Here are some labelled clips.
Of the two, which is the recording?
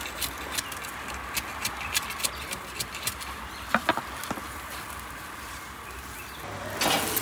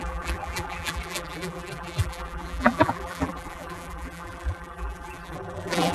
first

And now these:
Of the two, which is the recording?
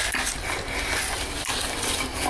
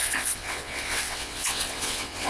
first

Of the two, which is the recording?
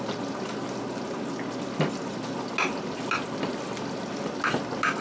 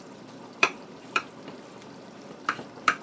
first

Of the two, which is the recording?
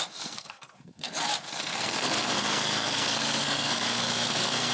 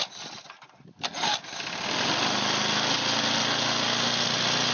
second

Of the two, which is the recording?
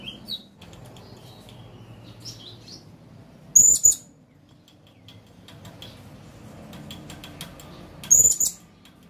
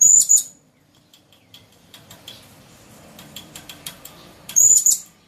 first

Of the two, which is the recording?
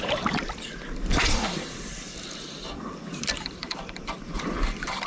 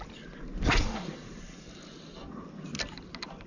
second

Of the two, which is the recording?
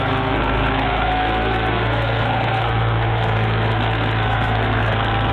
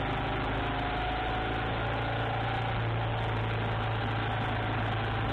second